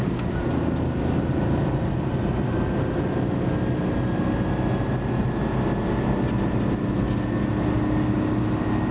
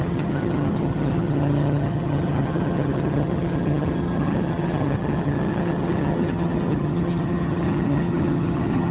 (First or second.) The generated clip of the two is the second